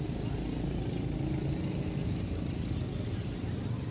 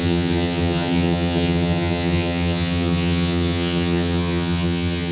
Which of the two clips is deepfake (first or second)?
second